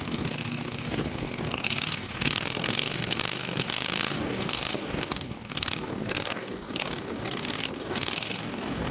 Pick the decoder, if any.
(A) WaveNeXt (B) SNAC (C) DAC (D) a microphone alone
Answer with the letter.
C